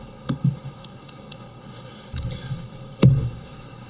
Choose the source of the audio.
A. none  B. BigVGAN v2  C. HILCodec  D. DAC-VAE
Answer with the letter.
C